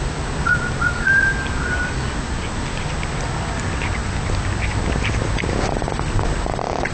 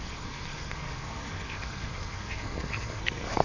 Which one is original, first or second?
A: first